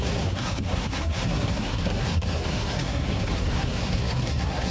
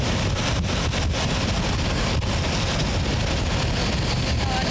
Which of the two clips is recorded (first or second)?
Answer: second